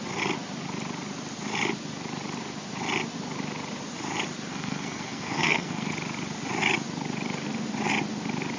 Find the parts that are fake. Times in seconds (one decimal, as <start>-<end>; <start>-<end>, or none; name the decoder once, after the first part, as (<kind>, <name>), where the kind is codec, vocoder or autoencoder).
4.5-5.9 (codec, SNAC)